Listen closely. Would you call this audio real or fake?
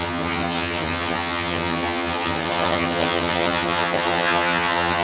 fake